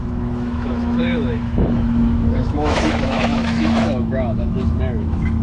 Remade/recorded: remade